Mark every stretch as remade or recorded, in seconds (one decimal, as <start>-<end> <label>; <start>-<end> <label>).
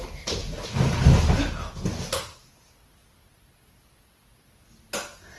0.0-5.4 recorded